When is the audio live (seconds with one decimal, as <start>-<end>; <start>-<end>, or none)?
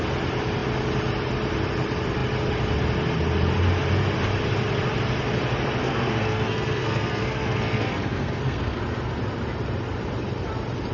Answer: 0.0-5.8; 8.8-10.9